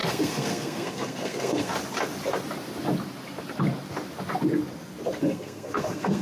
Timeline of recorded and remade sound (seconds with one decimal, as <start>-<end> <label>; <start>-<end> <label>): 0.0-1.7 remade; 1.7-5.2 recorded; 5.2-6.2 remade